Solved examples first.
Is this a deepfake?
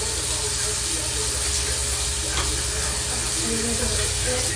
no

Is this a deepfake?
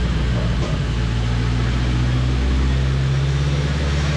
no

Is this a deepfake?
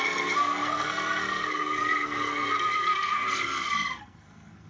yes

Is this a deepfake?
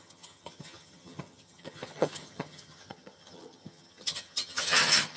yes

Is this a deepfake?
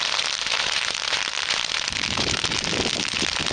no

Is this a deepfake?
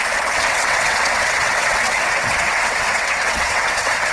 yes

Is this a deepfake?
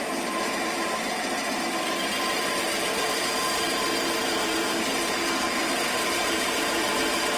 yes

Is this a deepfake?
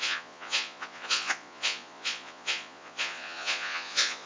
yes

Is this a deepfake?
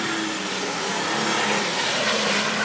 no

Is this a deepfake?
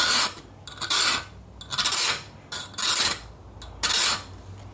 no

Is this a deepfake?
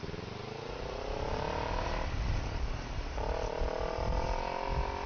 no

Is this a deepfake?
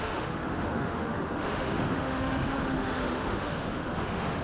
yes